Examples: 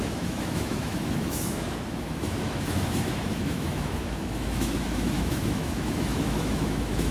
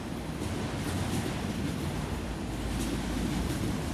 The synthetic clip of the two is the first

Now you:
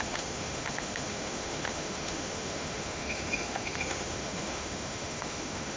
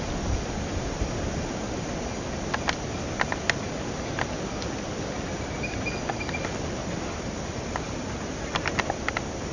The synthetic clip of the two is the first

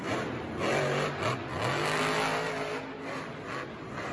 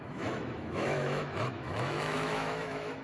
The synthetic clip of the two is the second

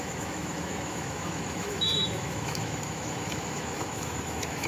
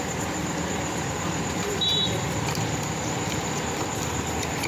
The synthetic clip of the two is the first